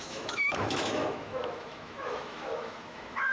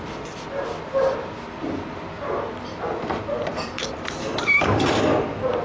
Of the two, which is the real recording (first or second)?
second